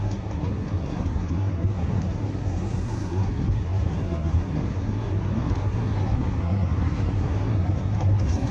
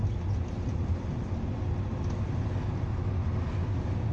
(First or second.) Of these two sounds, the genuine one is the second